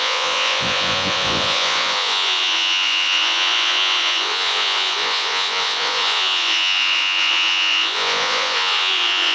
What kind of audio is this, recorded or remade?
remade